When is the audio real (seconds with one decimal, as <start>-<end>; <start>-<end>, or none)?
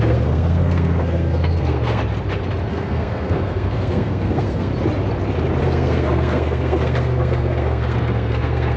2.0-2.7; 4.7-5.6